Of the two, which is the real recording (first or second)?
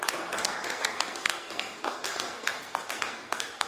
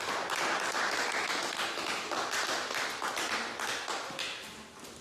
second